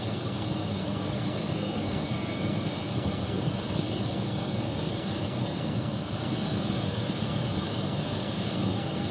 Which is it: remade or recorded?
remade